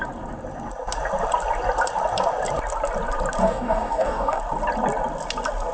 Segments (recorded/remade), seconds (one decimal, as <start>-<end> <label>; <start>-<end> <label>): 0.0-3.4 recorded; 3.4-4.4 remade; 4.4-5.7 recorded